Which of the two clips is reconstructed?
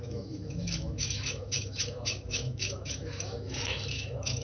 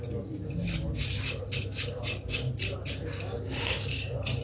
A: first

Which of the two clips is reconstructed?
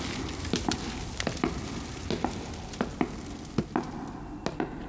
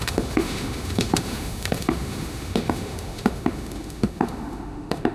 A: second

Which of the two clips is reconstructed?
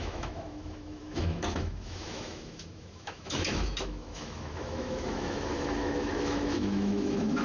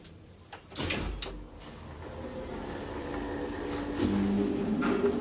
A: first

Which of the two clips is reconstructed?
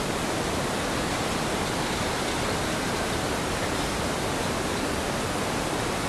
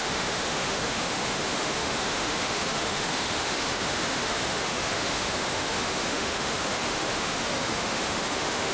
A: second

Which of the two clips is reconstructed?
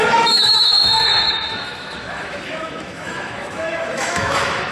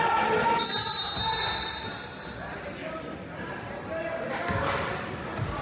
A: first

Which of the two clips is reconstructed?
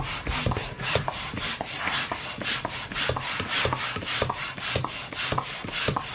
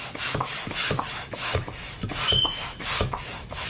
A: second